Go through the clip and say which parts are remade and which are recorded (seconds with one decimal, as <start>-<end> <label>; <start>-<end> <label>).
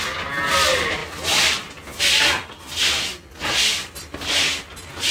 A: 0.0-5.1 recorded